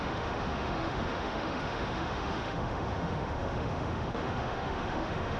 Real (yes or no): no